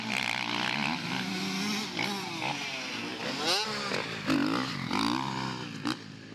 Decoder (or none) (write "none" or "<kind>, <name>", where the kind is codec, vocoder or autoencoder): none